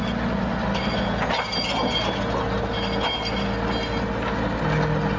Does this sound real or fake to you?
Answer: real